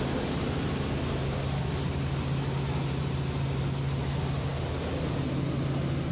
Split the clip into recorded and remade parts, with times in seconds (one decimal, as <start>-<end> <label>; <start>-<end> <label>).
0.0-6.1 recorded